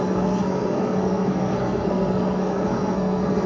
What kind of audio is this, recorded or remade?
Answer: remade